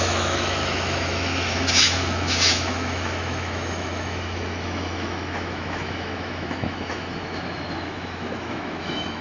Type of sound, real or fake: fake